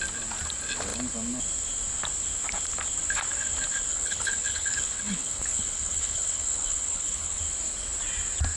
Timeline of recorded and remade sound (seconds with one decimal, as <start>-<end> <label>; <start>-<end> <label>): 0.0-3.9 recorded; 3.9-7.4 remade; 7.4-8.6 recorded